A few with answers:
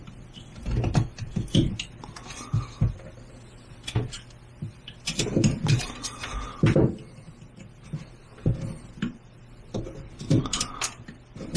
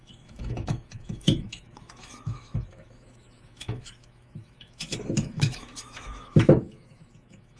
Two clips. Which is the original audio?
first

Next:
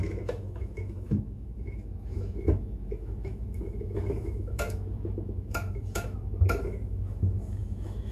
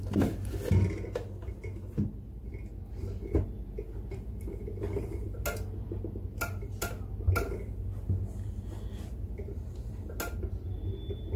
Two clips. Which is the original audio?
second